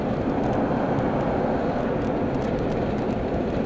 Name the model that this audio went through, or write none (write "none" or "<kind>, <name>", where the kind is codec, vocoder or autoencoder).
none